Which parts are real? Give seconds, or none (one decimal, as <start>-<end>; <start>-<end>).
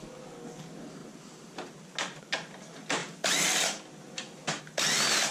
0.0-5.3